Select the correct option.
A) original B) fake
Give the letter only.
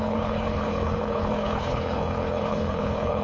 B